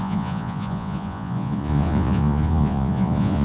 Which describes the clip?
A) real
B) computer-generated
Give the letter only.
B